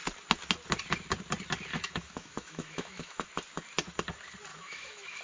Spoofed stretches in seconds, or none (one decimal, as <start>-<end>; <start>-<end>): 1.7-3.3; 4.5-5.2